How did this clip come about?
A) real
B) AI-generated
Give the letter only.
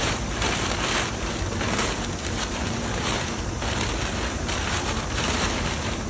B